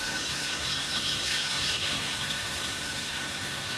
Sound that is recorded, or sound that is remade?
remade